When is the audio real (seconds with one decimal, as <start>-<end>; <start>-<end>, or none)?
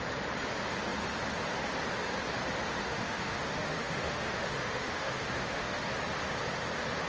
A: 0.0-2.8; 5.8-7.1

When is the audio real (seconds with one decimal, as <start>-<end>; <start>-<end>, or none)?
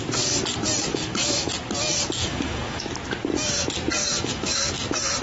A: 0.0-0.9; 1.5-2.2; 2.8-4.0; 4.7-5.2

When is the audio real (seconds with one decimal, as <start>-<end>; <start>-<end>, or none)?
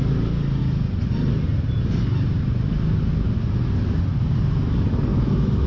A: 0.0-5.1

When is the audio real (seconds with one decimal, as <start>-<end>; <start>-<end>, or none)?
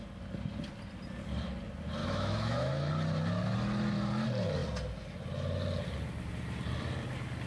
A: 0.0-2.0; 2.9-7.5